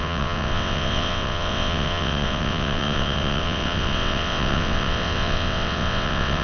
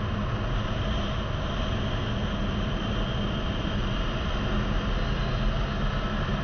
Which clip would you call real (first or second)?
second